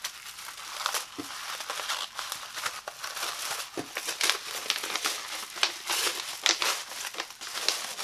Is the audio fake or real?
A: real